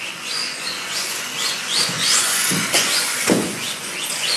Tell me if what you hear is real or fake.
fake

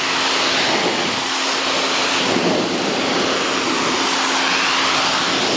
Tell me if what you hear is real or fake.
real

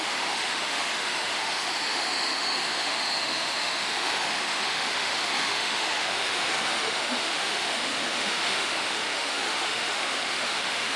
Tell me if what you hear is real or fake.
fake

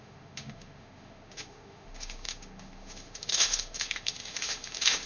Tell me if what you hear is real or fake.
fake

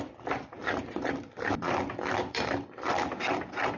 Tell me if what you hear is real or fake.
fake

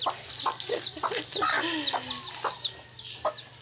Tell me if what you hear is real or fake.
real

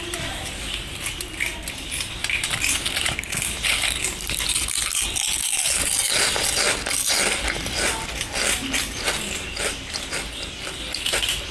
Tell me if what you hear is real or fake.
real